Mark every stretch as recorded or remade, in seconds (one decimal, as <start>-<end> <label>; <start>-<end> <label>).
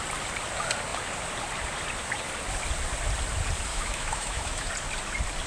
0.0-3.7 recorded; 3.7-4.7 remade; 4.7-5.5 recorded